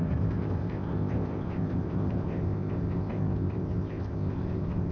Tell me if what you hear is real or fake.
fake